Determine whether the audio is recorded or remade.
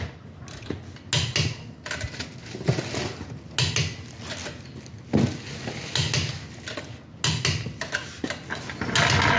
recorded